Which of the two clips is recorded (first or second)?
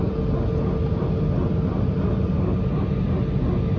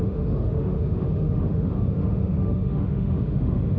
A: first